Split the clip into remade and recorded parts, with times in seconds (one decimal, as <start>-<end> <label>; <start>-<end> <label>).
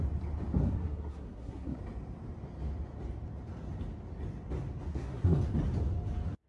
0.0-0.6 recorded; 0.6-1.8 remade; 1.8-4.9 recorded; 4.9-5.4 remade; 5.4-6.5 recorded